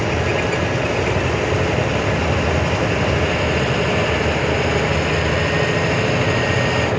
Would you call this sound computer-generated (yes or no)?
no